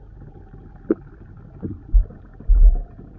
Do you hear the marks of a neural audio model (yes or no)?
no